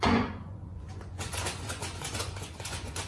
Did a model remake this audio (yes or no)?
yes